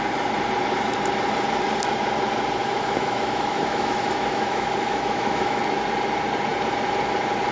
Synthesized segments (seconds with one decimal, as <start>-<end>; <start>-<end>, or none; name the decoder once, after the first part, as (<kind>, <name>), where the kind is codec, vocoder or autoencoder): 2.6-5.6 (autoencoder, DAC-VAE)